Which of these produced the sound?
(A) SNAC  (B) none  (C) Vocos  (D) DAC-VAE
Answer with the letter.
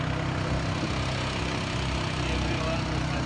B